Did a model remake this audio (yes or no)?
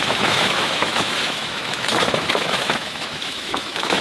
yes